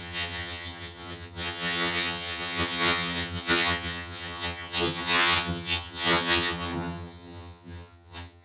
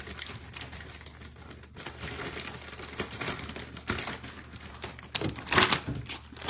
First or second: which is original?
second